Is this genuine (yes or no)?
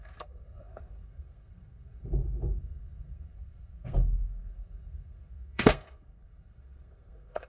no